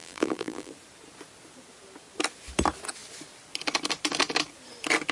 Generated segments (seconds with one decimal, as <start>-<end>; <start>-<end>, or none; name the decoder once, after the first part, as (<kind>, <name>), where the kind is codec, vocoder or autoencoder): 0.0-0.7 (vocoder, BigVGAN v2)